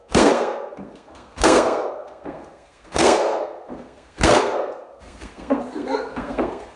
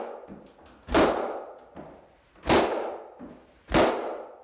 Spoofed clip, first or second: first